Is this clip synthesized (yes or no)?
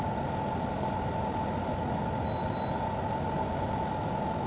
no